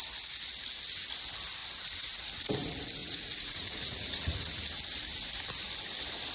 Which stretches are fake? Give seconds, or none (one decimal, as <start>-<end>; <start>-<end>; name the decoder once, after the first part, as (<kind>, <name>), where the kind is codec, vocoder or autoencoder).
3.0-4.6 (vocoder, Vocos)